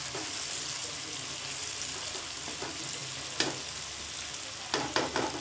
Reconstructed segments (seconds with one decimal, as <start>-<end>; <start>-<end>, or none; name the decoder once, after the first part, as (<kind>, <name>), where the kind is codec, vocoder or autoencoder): none